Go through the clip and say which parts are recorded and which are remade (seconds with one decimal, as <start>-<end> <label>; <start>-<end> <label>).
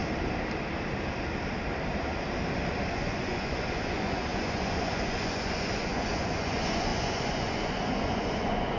0.0-2.9 recorded; 2.9-8.8 remade